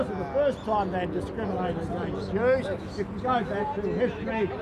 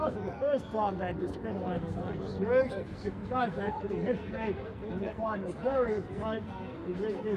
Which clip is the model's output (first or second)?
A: second